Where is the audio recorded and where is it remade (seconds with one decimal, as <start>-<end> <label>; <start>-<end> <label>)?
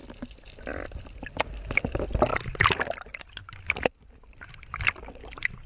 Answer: 0.0-1.1 remade; 1.1-5.7 recorded